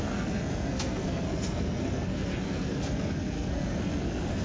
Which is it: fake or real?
fake